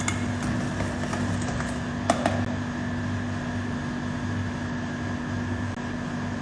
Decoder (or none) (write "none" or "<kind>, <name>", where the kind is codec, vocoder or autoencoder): none